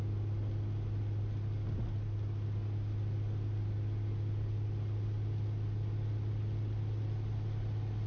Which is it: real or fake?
real